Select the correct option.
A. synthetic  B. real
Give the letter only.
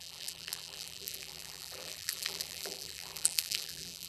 A